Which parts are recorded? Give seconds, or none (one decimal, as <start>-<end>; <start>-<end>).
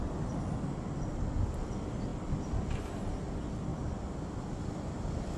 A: 0.0-5.4